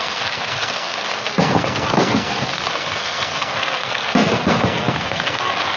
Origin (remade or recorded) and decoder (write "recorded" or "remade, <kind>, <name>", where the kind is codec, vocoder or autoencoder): remade, codec, SNAC